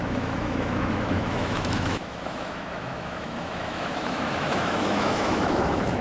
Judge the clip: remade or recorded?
remade